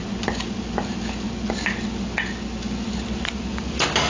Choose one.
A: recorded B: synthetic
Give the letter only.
A